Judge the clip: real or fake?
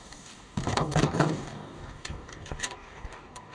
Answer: fake